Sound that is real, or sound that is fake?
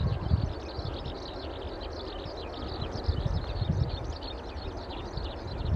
real